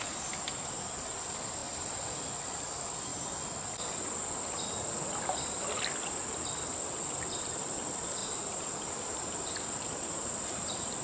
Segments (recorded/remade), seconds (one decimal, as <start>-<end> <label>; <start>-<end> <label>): 0.0-8.2 recorded; 8.2-11.0 remade